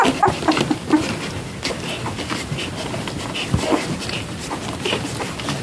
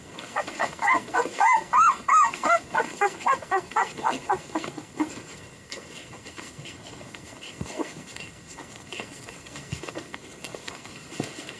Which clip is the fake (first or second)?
second